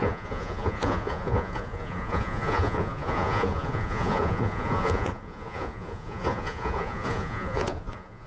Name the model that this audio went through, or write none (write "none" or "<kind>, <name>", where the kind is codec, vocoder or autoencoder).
vocoder, Vocos